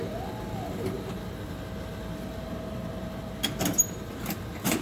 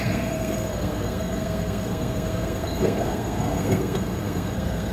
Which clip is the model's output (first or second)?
second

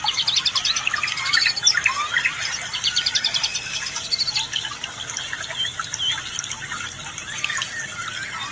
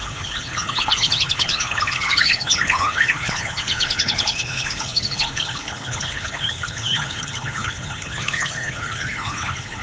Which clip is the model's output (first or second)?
second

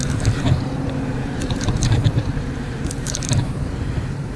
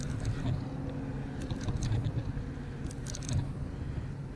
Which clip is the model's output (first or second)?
first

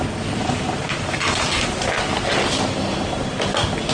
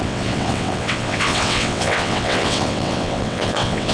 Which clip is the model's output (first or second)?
second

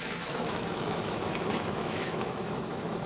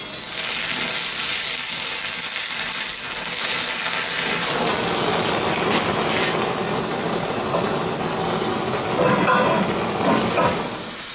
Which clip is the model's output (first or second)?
first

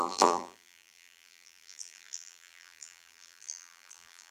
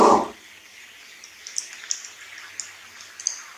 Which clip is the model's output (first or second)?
first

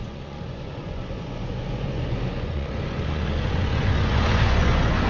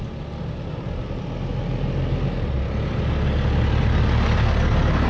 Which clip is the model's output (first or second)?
first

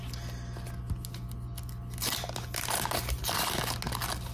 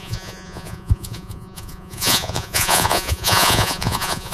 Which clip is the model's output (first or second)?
second